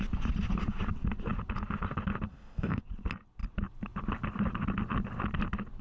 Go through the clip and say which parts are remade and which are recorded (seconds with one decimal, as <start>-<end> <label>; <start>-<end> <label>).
0.0-2.3 recorded; 2.3-2.8 remade; 2.8-5.8 recorded